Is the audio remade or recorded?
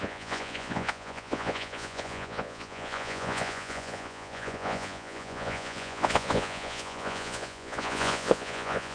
remade